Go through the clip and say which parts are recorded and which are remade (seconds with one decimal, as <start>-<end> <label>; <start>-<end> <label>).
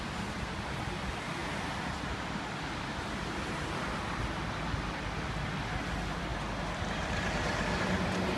0.0-8.4 recorded